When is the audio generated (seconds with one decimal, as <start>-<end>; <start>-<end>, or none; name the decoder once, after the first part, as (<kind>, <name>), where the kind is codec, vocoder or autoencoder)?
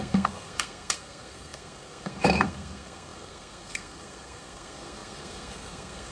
0.0-6.1 (codec, SNAC)